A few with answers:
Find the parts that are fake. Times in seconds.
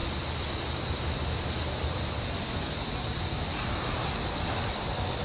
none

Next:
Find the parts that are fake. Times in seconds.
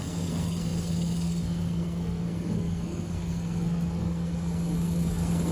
0.0-5.5 (codec, SNAC)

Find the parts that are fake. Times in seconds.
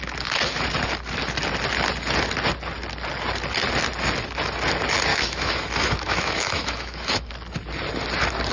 5.1-7.3 (autoencoder, DAC-VAE)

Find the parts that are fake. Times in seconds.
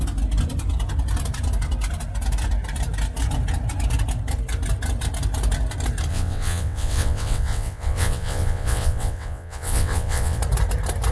6.1-10.4 (vocoder, WaveNeXt)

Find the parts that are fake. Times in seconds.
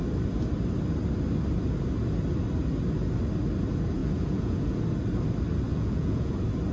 4.0-4.8 (vocoder, Vocos); 5.7-6.3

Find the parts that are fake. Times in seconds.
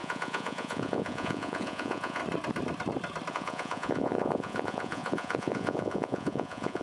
0.0-2.2 (vocoder, Vocos); 3.3-6.8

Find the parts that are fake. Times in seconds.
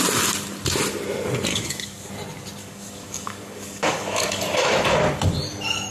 1.5-2.1 (codec, DAC); 2.6-4.4